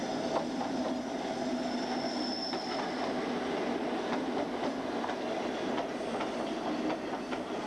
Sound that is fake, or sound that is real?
real